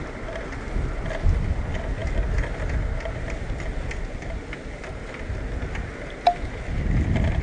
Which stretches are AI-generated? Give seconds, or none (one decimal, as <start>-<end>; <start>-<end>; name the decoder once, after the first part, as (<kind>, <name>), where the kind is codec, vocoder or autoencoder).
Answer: none